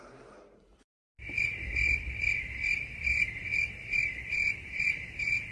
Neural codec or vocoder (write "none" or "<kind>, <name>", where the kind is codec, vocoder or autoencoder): none